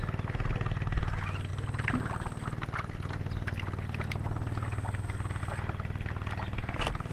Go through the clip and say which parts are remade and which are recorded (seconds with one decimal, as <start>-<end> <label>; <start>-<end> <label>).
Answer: 0.0-7.1 recorded

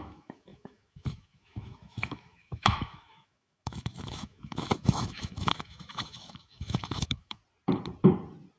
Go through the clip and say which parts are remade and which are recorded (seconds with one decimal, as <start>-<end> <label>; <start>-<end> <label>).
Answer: 0.0-7.4 remade; 7.4-8.6 recorded

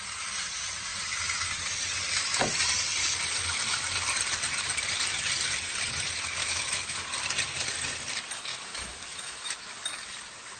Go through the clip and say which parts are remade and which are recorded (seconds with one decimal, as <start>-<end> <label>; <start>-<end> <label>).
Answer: 0.0-6.4 recorded; 6.4-7.0 remade; 7.0-8.5 recorded; 8.5-9.7 remade; 9.7-10.6 recorded